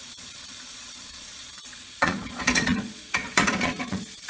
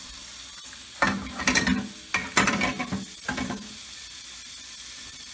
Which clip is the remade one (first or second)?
first